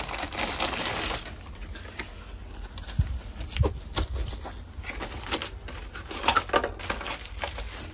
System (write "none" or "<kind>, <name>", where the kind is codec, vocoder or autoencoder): none